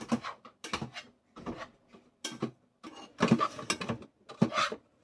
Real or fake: real